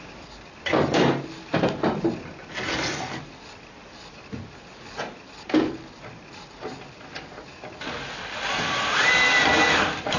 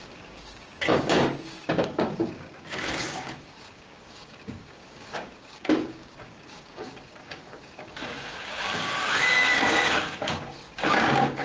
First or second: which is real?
first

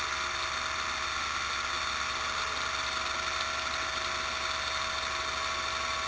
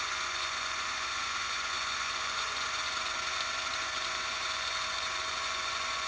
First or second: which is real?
first